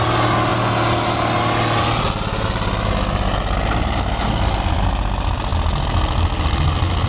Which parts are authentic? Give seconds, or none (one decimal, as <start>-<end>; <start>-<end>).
0.0-7.1